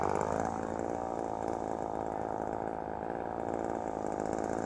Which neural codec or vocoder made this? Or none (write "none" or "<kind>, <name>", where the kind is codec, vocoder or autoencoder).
none